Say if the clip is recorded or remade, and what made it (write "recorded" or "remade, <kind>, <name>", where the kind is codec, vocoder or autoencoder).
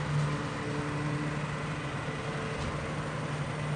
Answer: recorded